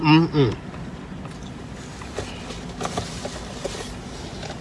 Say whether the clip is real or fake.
real